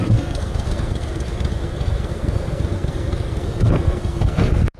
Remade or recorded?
remade